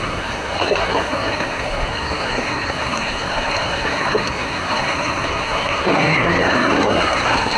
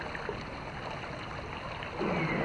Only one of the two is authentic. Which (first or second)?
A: second